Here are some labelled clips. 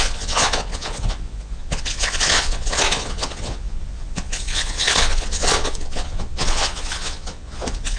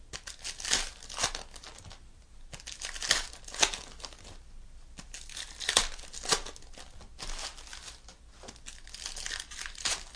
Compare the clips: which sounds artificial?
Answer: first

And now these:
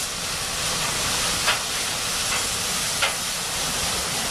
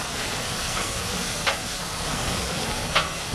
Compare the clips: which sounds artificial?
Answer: second